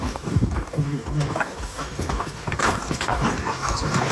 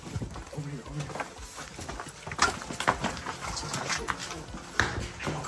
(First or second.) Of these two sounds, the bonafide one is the second